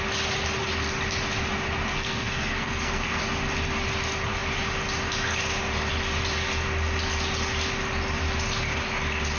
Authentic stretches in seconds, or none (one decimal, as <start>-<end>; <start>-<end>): 0.0-1.9; 3.2-9.4